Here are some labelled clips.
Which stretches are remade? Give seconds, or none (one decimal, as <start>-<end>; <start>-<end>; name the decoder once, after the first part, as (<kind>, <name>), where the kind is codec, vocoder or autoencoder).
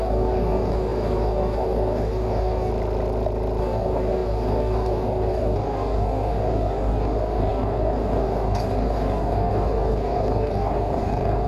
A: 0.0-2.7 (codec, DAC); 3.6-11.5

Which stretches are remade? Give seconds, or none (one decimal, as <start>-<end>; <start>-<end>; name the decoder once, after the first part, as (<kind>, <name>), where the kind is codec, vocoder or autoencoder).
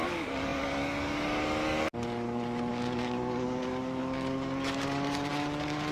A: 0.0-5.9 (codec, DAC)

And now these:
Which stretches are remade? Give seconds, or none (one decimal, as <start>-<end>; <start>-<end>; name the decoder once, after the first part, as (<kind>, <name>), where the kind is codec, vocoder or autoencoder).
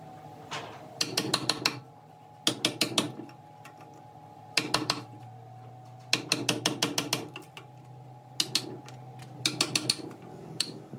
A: 10.3-11.0 (codec, DAC)